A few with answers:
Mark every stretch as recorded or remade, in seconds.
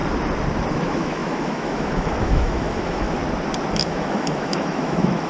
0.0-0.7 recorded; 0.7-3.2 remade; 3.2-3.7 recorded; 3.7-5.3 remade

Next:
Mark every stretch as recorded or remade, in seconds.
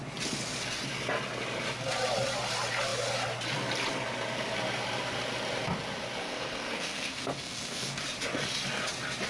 0.0-6.2 recorded; 6.2-8.0 remade; 8.0-9.3 recorded